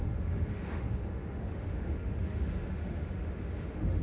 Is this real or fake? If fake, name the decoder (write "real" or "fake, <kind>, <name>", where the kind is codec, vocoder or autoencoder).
fake, autoencoder, DAC-VAE